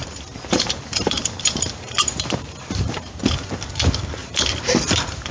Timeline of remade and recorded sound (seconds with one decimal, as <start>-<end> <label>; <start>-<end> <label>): 0.0-3.2 remade; 3.2-4.2 recorded; 4.2-4.8 remade; 4.8-5.3 recorded